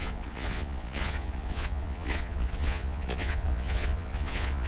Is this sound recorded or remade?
remade